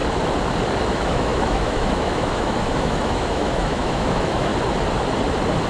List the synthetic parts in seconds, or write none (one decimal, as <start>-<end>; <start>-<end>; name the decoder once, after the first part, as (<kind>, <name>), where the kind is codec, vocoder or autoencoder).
0.9-4.5 (autoencoder, DAC-VAE)